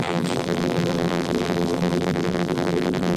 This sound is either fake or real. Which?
fake